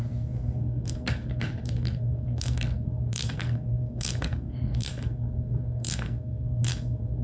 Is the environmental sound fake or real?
fake